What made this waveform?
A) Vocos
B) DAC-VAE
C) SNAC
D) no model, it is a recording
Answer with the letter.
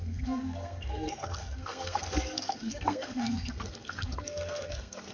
C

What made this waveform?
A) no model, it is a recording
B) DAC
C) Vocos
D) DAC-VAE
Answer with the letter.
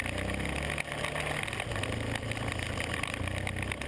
A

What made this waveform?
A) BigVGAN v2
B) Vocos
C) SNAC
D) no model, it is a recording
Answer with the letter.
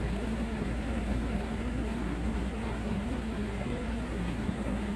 C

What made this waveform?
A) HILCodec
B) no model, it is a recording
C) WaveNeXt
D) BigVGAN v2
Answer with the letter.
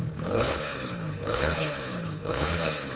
A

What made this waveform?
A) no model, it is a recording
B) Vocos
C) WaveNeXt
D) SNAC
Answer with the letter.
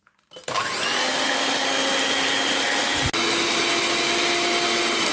A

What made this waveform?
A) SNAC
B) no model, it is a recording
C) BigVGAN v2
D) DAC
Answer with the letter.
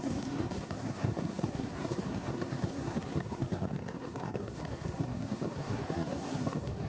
A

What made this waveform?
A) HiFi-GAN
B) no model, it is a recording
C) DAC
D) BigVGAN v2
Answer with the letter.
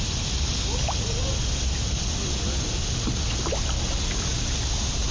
B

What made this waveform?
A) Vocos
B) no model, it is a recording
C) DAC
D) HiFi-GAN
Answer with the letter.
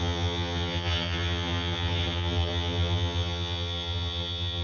D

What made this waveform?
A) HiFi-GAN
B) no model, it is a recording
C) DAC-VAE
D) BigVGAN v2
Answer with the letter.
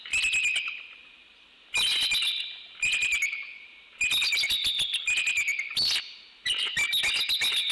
B